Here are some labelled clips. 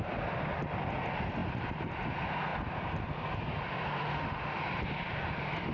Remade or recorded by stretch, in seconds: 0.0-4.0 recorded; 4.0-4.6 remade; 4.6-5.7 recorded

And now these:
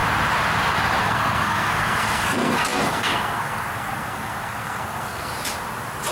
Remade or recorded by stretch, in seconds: 0.0-1.0 recorded; 1.0-5.3 remade; 5.3-6.1 recorded

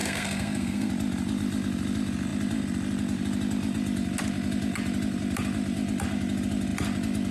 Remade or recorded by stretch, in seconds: 0.0-0.9 remade; 0.9-7.3 recorded

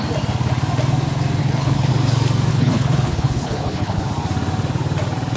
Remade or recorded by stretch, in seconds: 0.0-1.4 recorded; 1.4-1.9 remade; 1.9-2.5 recorded; 2.5-4.1 remade; 4.1-5.4 recorded

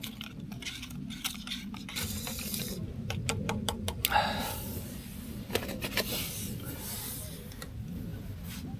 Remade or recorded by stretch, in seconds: 0.0-8.8 recorded